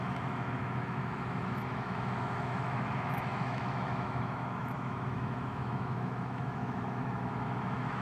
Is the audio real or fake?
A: fake